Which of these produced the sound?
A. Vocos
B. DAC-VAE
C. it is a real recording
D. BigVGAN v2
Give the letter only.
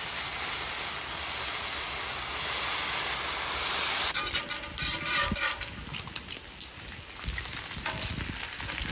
C